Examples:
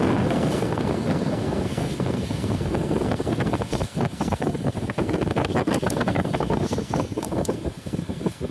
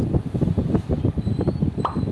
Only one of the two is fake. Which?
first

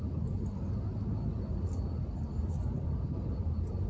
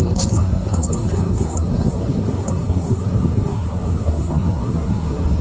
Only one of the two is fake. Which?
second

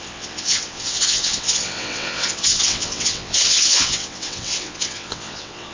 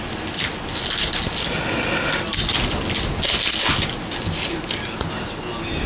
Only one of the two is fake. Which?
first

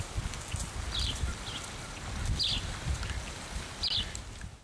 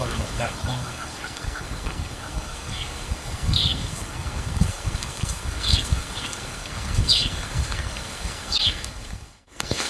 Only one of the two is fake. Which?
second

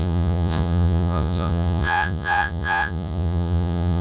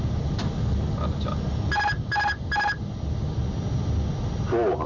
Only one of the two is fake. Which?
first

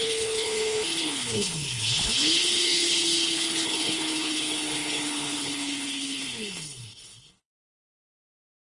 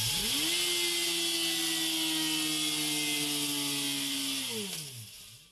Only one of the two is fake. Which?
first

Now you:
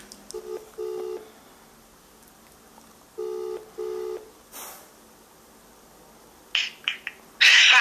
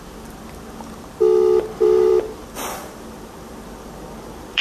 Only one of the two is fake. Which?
second